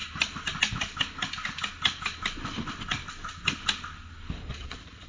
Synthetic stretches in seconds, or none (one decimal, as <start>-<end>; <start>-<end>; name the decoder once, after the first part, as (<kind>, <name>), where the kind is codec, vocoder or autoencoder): 4.5-5.1 (vocoder, Vocos)